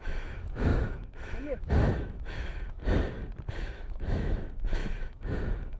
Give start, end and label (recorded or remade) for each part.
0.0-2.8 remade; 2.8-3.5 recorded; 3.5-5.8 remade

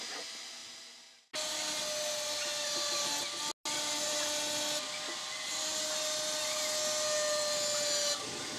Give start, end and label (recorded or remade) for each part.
0.0-8.6 recorded

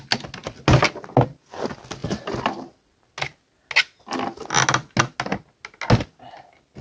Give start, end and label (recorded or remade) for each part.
0.0-6.8 recorded

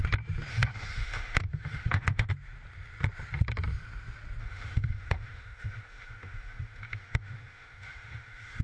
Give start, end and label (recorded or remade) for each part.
0.0-0.5 recorded; 0.5-2.3 remade; 2.3-4.4 recorded; 4.4-8.6 remade

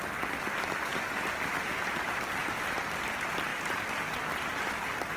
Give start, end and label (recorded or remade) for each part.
0.0-5.2 recorded